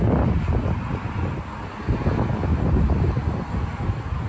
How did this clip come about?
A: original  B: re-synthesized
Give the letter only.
A